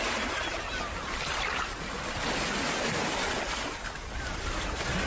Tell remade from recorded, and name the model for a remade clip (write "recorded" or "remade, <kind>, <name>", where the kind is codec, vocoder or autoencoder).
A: recorded